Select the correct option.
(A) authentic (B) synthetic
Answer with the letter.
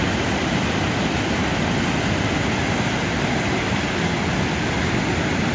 A